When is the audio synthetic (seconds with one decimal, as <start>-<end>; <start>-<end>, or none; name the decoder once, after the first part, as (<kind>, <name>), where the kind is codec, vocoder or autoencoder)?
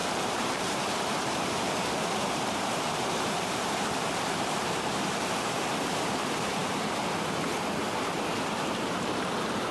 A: 0.0-9.7 (vocoder, BigVGAN v2)